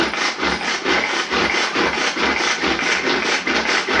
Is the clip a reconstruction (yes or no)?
no